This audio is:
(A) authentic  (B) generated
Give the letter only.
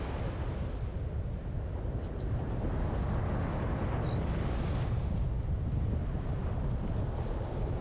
A